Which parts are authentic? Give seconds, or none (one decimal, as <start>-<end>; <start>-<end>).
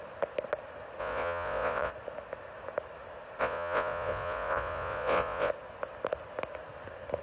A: 0.0-1.0; 1.9-3.4; 5.5-7.2